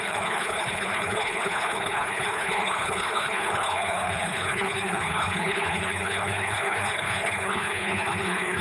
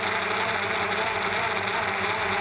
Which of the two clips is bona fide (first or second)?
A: second